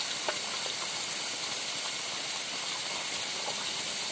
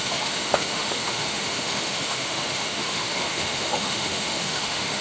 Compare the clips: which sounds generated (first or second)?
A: second